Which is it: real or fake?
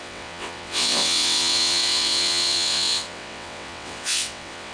fake